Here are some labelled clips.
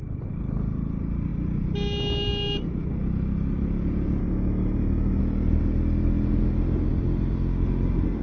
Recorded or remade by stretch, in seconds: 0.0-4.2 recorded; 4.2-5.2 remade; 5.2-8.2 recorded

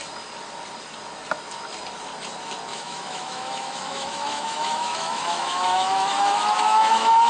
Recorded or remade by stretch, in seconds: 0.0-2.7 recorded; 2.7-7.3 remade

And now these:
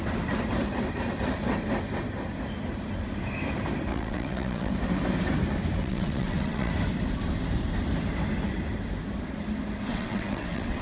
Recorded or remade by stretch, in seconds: 0.0-3.9 recorded; 3.9-4.7 remade; 4.7-5.8 recorded; 5.8-6.7 remade; 6.7-9.9 recorded; 9.9-10.8 remade

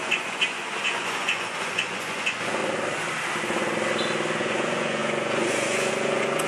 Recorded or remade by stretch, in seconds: 0.0-2.6 remade; 2.6-4.4 recorded; 4.4-6.5 remade

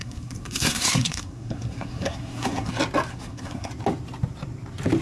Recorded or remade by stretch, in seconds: 0.0-2.7 remade; 2.7-3.1 recorded; 3.1-3.7 remade; 3.7-5.0 recorded

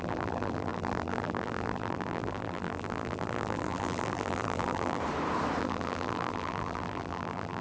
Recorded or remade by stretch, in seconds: 0.0-5.0 remade; 5.0-5.6 recorded; 5.6-7.6 remade

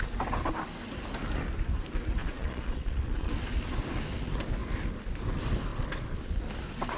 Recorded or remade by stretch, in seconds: 0.0-2.2 recorded; 2.2-3.3 remade; 3.3-7.0 recorded